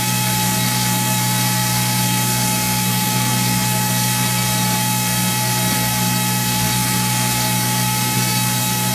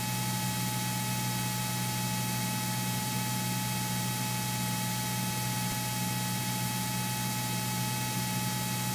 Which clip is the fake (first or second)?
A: first